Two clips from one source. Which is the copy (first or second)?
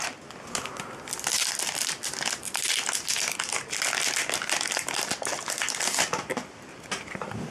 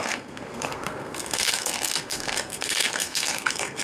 second